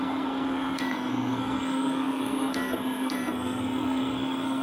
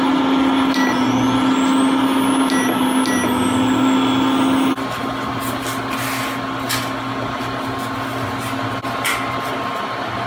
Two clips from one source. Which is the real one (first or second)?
second